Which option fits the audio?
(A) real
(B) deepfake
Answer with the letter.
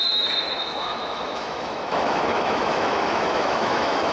B